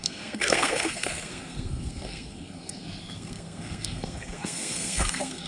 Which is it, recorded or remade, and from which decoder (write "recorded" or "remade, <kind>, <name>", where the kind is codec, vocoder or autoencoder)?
remade, codec, SNAC